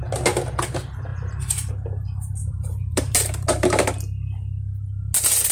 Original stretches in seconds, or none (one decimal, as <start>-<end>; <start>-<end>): 0.0-1.1; 1.7-2.4; 3.5-5.5